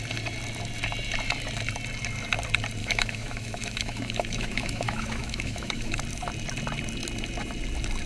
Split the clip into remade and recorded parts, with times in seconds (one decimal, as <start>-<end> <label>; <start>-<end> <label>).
0.0-2.8 recorded; 2.8-6.0 remade; 6.0-8.1 recorded